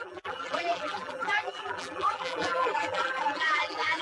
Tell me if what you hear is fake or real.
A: fake